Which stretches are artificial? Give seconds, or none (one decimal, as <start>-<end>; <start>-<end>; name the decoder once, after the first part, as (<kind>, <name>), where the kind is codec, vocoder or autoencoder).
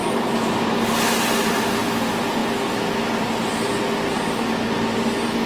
none